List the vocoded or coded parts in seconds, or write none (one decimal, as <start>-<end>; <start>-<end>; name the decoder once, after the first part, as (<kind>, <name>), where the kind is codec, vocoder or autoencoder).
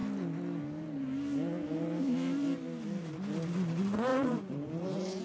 4.1-5.2 (vocoder, Vocos)